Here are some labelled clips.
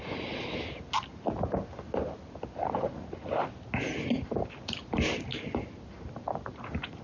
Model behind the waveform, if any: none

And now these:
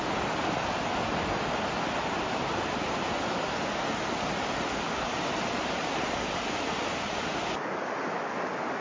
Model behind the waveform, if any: none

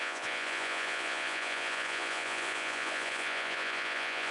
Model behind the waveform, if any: vocoder, Vocos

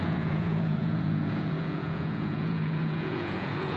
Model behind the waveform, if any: vocoder, Vocos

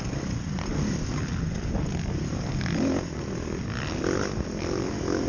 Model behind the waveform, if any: none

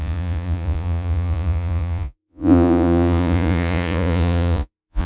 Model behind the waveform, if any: vocoder, Vocos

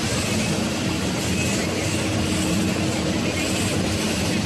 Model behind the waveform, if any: none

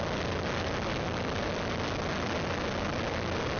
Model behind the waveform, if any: none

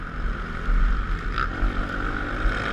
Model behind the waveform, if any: none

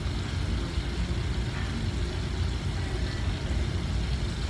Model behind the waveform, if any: none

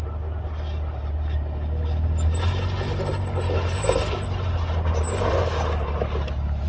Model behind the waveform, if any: none